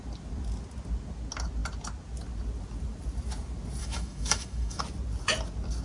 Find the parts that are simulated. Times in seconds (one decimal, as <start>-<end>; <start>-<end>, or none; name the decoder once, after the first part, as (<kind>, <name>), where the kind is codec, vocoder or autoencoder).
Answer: 3.8-4.8 (autoencoder, DAC-VAE)